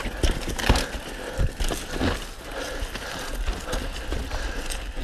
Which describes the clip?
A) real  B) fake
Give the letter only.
A